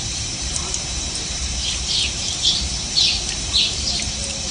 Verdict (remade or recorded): remade